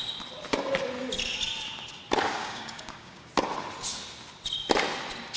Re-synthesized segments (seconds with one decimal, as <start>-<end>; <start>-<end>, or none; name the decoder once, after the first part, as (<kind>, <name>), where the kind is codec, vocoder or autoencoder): 2.4-3.3 (codec, DAC)